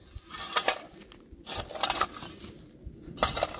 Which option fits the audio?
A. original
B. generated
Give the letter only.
A